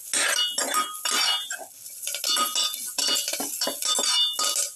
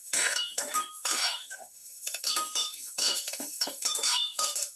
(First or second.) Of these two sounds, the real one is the first